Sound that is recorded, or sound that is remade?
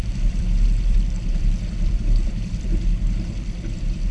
remade